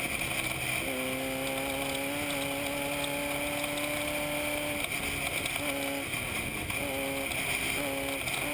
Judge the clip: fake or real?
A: real